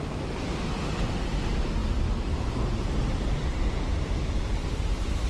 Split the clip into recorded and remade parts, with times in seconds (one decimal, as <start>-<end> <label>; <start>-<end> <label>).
0.0-5.3 recorded